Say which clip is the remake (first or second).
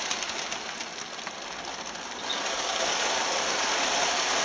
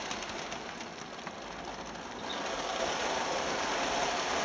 first